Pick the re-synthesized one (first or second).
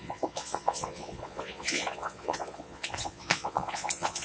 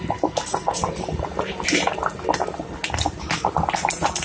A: first